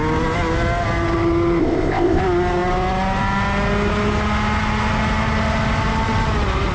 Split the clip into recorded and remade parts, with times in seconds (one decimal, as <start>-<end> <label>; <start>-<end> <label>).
0.0-1.6 recorded; 1.6-2.2 remade; 2.2-6.7 recorded